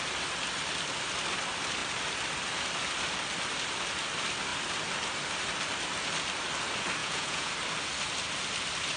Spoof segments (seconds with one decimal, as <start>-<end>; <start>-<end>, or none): 7.0-7.5